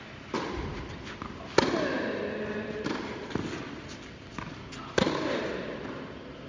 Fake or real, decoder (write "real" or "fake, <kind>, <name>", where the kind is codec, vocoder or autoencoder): real